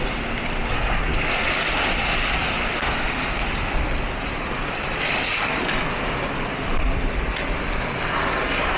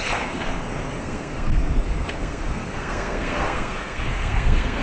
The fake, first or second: second